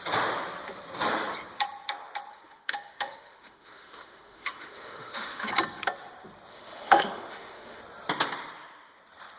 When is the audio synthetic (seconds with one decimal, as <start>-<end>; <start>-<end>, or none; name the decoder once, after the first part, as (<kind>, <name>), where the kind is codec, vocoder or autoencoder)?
2.3-5.5 (autoencoder, DAC-VAE); 6.5-7.8

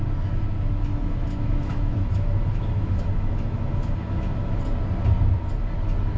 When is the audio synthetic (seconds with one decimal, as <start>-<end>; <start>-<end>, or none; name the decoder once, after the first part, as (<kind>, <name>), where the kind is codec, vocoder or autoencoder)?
0.9-4.6 (autoencoder, DAC-VAE)

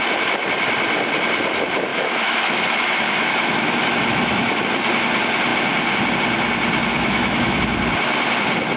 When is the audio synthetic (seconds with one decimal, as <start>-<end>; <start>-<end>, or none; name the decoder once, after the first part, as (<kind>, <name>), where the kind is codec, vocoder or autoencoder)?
1.9-4.6 (autoencoder, DAC-VAE); 6.9-7.6

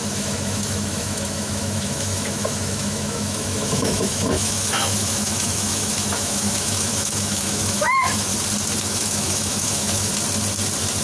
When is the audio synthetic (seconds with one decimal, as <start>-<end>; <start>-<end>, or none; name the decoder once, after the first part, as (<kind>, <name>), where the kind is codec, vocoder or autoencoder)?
0.0-8.3 (autoencoder, DAC-VAE); 8.8-10.1

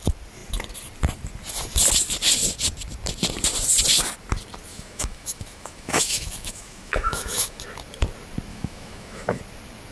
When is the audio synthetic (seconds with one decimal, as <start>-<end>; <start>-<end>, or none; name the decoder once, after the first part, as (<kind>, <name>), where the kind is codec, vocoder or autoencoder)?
4.7-7.6 (autoencoder, DAC-VAE); 8.5-9.4

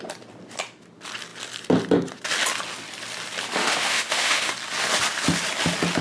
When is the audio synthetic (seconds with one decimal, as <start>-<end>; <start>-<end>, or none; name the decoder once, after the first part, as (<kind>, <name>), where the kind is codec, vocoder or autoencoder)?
3.6-4.5 (autoencoder, DAC-VAE)

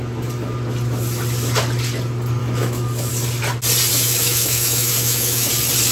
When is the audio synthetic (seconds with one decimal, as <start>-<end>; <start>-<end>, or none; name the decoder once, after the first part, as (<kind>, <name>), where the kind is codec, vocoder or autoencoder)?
2.4-3.1 (autoencoder, DAC-VAE); 3.9-5.5